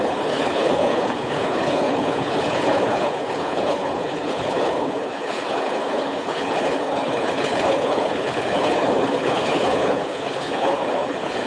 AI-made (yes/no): yes